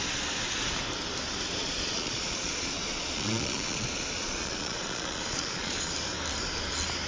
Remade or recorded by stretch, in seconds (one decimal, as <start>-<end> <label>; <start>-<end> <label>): 0.0-1.6 recorded; 1.6-5.9 remade; 5.9-7.1 recorded